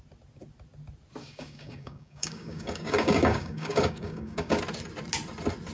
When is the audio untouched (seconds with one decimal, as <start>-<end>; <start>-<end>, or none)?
0.0-1.2; 4.6-5.7